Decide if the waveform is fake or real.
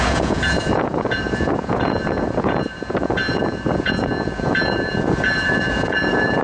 fake